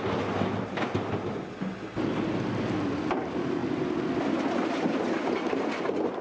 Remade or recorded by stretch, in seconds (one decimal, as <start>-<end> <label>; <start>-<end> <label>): 0.0-6.2 recorded